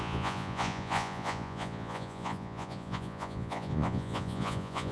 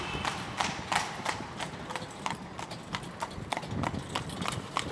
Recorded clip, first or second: second